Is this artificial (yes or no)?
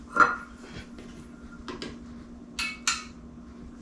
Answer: no